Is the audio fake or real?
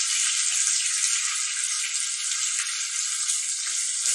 real